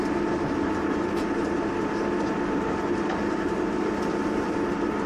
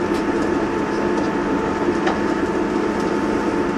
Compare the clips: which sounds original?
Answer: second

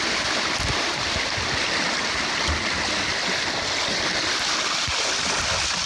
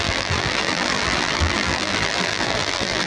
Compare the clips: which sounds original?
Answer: first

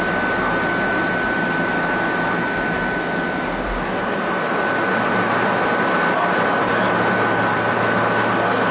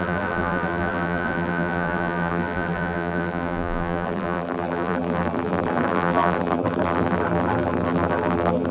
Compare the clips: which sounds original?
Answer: first